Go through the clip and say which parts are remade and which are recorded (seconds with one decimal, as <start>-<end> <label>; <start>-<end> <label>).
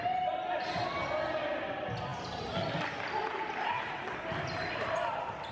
0.0-5.5 recorded